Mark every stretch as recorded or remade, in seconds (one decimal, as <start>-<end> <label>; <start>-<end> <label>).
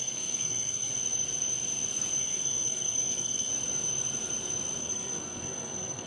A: 0.0-0.9 remade; 0.9-2.2 recorded; 2.2-3.5 remade; 3.5-4.8 recorded; 4.8-6.1 remade